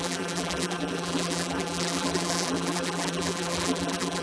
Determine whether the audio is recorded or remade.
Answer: remade